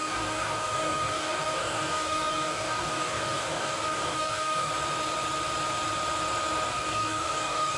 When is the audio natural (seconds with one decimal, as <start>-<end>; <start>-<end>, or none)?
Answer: 4.7-6.7